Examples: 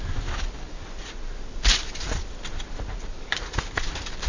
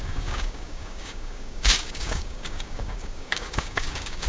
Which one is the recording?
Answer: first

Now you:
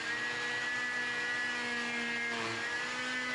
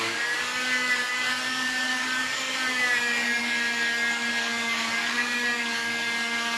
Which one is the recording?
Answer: first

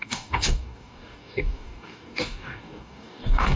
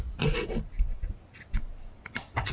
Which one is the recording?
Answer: second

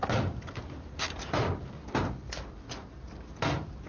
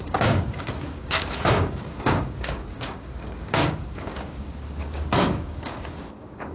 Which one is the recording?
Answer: first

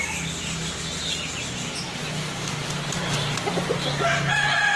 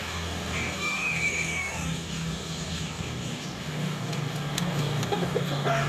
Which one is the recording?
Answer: first